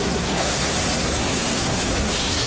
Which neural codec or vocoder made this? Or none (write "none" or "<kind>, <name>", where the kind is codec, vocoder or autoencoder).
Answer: codec, SNAC